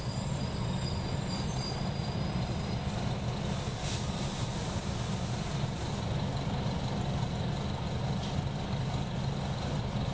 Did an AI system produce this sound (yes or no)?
no